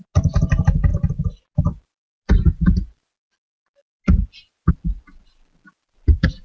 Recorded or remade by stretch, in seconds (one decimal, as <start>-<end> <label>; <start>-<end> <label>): 0.0-6.4 recorded